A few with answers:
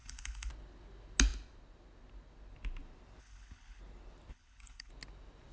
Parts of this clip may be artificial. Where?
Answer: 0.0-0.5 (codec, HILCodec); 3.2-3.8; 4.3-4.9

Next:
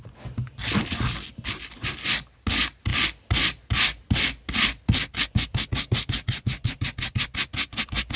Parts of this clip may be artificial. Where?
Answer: none

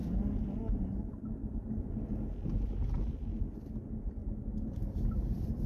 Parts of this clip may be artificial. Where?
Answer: none

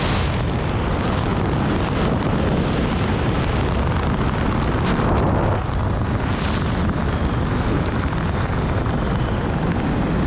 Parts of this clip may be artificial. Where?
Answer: none

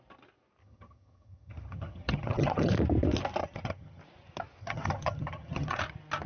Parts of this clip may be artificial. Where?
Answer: 0.6-2.7 (vocoder, HiFi-GAN); 3.4-4.0; 4.6-5.8

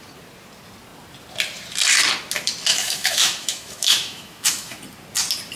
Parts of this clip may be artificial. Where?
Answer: 2.7-4.8 (autoencoder, DAC-VAE)

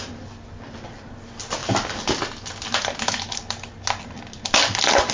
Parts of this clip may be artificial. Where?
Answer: none